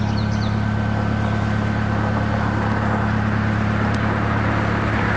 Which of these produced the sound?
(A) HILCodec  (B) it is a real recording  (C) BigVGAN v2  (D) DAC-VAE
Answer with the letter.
B